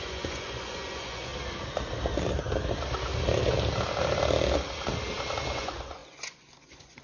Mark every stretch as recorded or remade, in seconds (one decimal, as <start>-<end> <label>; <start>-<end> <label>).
0.0-1.3 remade; 1.3-5.5 recorded; 5.5-7.0 remade